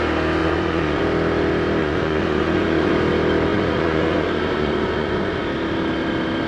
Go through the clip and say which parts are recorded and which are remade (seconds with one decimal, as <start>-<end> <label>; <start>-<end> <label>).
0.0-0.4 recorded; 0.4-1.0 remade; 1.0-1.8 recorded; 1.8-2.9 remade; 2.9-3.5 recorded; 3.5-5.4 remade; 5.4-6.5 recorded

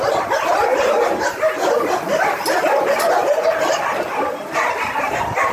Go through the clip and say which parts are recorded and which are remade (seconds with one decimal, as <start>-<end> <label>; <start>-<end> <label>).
0.0-0.7 remade; 0.7-1.7 recorded; 1.7-5.5 remade

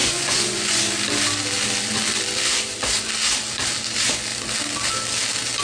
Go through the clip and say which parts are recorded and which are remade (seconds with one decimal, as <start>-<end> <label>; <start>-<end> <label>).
0.0-0.8 remade; 0.8-5.6 recorded